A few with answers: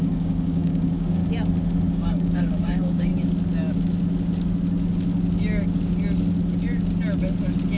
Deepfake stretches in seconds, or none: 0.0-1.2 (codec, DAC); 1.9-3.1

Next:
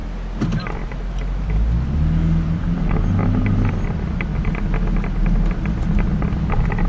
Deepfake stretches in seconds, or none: none

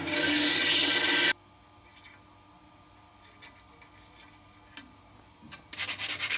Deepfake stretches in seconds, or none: none